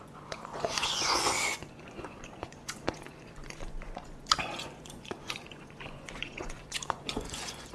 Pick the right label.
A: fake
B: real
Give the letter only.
A